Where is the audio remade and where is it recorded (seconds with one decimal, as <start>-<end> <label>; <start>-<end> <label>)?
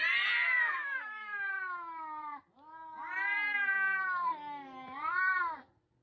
0.0-0.7 recorded; 0.7-1.5 remade; 1.5-6.0 recorded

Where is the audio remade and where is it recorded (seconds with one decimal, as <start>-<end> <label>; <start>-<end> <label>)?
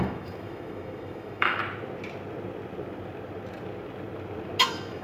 0.0-1.6 remade; 1.6-4.6 recorded; 4.6-5.0 remade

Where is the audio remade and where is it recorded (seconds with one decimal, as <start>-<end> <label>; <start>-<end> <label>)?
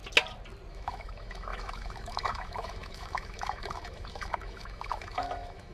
0.0-0.7 recorded; 0.7-5.7 remade